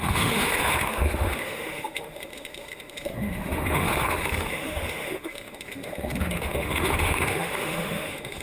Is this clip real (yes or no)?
no